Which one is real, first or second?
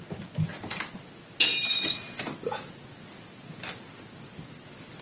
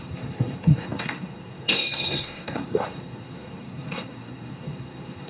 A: first